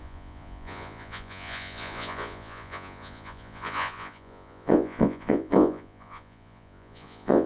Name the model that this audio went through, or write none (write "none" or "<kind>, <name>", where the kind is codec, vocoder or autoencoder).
vocoder, Vocos